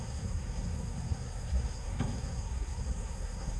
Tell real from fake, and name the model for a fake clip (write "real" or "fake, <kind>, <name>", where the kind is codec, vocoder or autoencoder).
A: fake, codec, SNAC